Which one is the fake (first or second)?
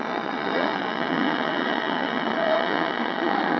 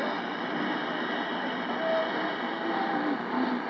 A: first